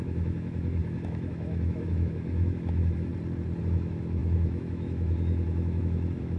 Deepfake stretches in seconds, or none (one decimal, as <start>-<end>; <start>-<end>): 0.0-3.1; 3.6-6.4